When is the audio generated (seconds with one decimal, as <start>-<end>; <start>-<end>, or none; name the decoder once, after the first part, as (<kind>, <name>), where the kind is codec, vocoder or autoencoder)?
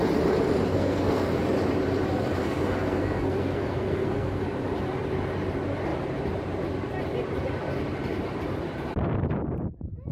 0.7-1.4 (codec, SNAC); 2.4-4.4